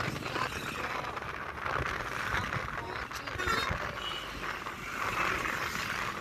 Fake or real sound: real